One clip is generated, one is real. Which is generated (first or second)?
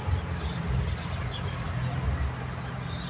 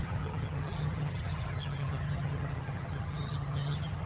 second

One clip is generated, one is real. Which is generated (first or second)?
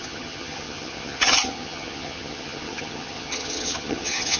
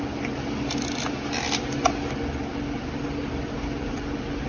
first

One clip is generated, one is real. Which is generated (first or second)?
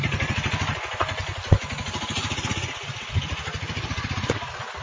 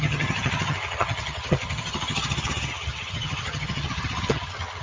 second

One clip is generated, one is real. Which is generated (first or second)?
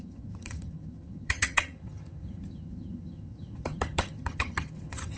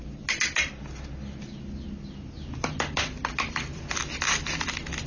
first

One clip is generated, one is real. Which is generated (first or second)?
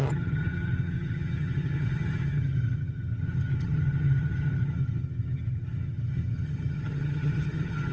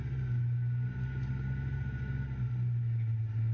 first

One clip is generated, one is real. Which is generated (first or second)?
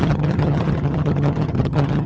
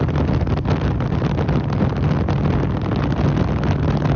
first